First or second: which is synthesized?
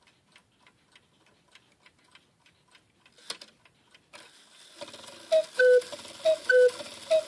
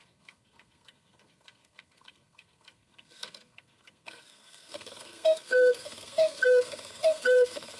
second